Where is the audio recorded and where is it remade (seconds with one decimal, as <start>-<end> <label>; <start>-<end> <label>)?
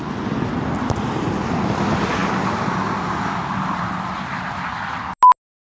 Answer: 0.0-5.7 recorded